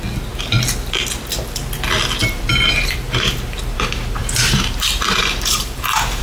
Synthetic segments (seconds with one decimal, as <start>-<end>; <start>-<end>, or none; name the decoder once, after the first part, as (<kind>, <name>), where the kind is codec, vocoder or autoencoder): 2.2-6.2 (vocoder, BigVGAN v2)